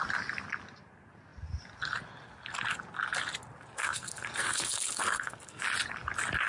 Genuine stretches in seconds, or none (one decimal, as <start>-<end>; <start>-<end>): 0.0-3.8; 5.6-6.5